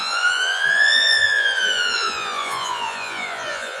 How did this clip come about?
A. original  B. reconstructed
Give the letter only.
B